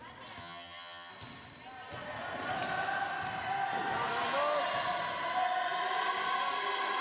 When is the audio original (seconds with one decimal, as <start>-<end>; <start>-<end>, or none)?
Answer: 0.0-0.4; 1.1-7.0